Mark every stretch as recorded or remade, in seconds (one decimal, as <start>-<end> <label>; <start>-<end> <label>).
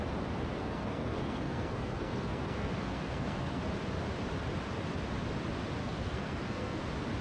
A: 0.0-0.6 recorded; 0.6-3.6 remade; 3.6-5.8 recorded; 5.8-6.8 remade; 6.8-7.2 recorded